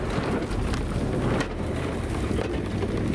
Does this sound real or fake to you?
real